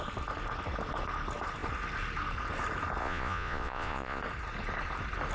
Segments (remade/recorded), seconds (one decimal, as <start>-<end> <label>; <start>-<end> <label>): 0.0-3.0 recorded; 3.0-4.2 remade; 4.2-5.3 recorded

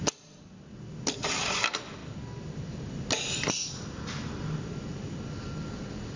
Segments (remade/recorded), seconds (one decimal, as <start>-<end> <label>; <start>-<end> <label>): 0.0-6.2 recorded

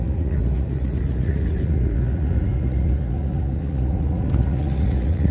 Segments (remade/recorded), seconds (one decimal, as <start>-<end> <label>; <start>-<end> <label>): 0.0-5.3 remade

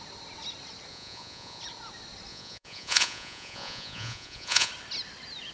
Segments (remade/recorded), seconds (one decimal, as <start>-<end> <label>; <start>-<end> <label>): 0.0-0.9 recorded; 0.9-1.6 remade; 1.6-2.3 recorded; 2.3-4.7 remade; 4.7-5.5 recorded

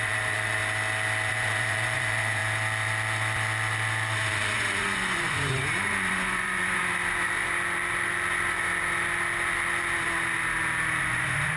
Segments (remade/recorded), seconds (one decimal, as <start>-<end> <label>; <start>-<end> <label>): 0.0-0.6 remade; 0.6-1.3 recorded; 1.3-2.4 remade; 2.4-4.3 recorded; 4.3-6.8 remade; 6.8-11.0 recorded; 11.0-11.6 remade

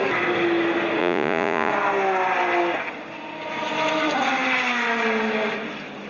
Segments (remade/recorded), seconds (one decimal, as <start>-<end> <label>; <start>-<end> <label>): 0.0-1.0 recorded; 1.0-1.7 remade; 1.7-6.1 recorded

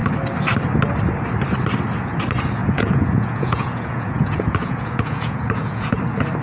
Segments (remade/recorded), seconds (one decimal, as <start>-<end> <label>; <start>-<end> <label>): 0.0-2.6 recorded; 2.6-6.0 remade; 6.0-6.4 recorded

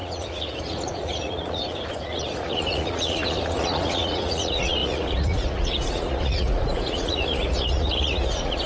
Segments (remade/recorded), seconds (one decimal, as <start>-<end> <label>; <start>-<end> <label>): 0.0-8.7 remade